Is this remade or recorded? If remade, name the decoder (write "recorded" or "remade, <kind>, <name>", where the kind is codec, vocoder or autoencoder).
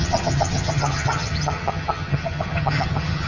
remade, vocoder, HiFi-GAN